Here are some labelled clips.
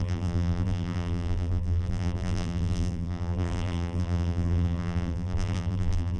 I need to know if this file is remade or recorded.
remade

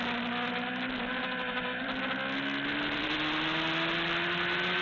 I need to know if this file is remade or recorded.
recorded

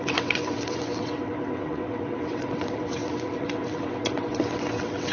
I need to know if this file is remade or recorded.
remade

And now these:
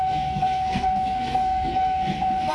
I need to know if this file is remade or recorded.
remade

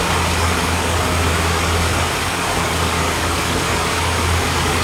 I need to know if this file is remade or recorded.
remade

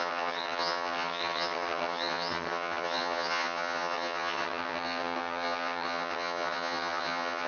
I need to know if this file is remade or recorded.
remade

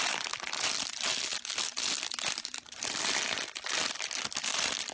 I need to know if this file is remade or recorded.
recorded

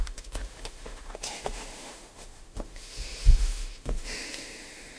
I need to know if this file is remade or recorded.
remade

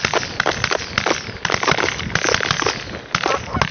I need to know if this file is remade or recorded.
recorded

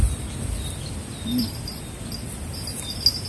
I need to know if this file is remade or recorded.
recorded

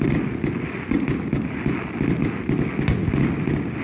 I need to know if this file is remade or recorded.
recorded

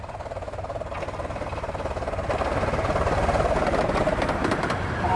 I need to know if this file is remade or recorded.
recorded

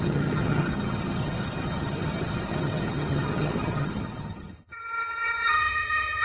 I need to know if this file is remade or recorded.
remade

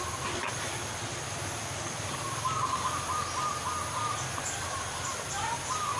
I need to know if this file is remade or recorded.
recorded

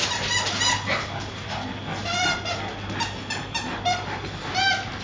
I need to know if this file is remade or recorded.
recorded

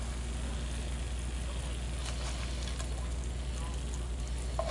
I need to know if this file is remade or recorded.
recorded